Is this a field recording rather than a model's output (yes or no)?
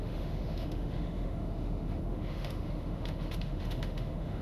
no